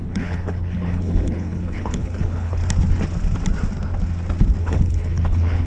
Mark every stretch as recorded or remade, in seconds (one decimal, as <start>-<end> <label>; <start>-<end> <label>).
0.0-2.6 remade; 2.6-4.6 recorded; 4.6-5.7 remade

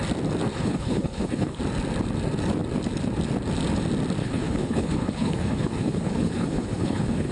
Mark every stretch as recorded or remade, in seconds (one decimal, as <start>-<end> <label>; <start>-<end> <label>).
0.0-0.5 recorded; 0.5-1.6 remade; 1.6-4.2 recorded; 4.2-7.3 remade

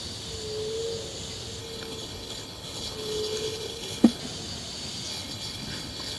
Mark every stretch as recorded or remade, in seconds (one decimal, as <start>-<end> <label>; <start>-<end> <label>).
0.0-1.6 recorded; 1.6-4.2 remade; 4.2-5.1 recorded; 5.1-6.2 remade

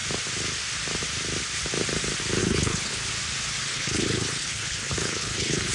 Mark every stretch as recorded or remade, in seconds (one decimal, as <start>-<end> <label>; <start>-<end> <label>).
0.0-2.4 recorded; 2.4-3.1 remade; 3.1-3.7 recorded; 3.7-5.7 remade

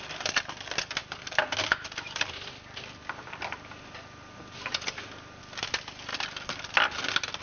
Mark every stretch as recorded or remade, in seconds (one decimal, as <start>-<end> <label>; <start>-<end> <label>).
0.0-7.4 recorded